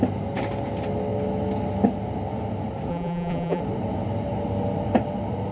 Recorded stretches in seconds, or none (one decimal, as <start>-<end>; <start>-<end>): 0.0-2.9; 3.6-5.5